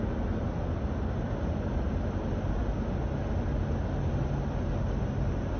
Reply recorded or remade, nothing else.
recorded